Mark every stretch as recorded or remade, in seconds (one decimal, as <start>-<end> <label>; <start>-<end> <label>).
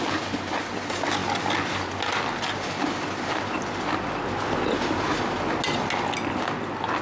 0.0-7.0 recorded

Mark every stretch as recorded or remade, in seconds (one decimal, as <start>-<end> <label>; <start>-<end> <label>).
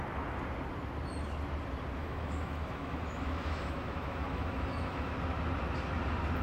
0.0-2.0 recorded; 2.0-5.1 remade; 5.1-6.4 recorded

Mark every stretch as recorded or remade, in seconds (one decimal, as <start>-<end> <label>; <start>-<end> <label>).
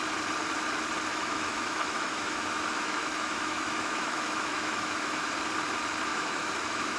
0.0-1.1 recorded; 1.1-5.3 remade; 5.3-6.1 recorded; 6.1-7.0 remade